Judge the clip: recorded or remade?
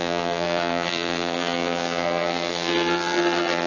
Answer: remade